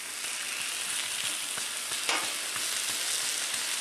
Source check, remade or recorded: recorded